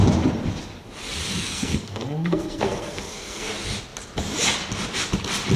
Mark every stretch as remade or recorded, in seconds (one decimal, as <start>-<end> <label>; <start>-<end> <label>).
0.0-1.3 recorded; 1.3-3.5 remade; 3.5-5.6 recorded

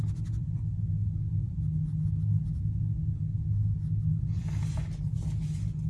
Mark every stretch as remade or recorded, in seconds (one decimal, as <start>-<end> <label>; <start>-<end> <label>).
0.0-5.9 recorded

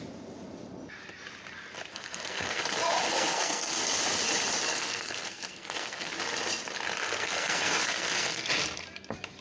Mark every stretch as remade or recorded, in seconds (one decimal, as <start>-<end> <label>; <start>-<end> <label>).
0.0-1.9 recorded; 1.9-2.6 remade; 2.6-3.1 recorded; 3.1-3.8 remade; 3.8-4.7 recorded; 4.7-6.1 remade; 6.1-7.0 recorded; 7.0-8.5 remade; 8.5-9.4 recorded

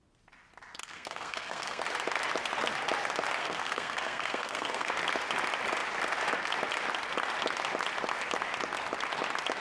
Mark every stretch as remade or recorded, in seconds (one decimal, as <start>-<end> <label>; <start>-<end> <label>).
0.0-0.8 recorded; 0.8-1.8 remade; 1.8-3.4 recorded; 3.4-4.9 remade; 4.9-9.6 recorded

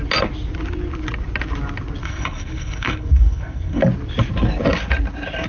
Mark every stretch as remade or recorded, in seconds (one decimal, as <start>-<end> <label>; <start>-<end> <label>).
0.0-2.0 recorded; 2.0-3.8 remade; 3.8-5.5 recorded

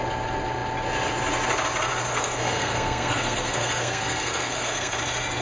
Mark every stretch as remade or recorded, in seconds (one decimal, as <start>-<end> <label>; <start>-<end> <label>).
0.0-2.1 recorded; 2.1-5.0 remade; 5.0-5.4 recorded